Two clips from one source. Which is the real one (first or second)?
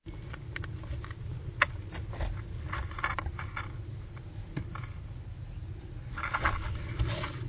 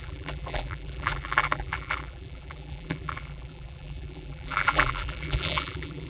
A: first